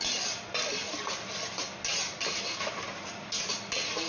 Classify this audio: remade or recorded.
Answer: recorded